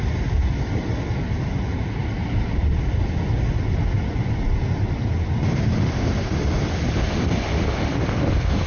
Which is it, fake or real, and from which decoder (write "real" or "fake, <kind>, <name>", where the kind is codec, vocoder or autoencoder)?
real